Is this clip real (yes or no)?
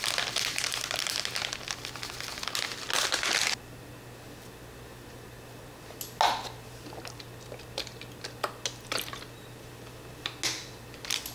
yes